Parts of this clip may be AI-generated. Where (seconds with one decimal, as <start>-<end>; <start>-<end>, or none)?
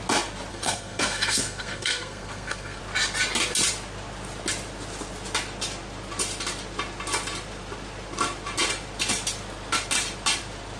0.5-2.8